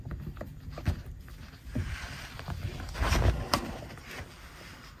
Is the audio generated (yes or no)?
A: no